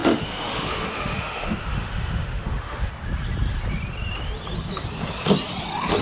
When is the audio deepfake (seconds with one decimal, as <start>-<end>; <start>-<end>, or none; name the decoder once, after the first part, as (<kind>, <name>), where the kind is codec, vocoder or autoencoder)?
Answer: 0.0-2.9 (autoencoder, DAC-VAE)